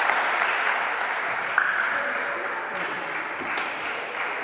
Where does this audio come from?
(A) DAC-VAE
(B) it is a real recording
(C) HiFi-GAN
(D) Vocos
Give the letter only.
B